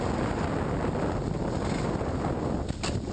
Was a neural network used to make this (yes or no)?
no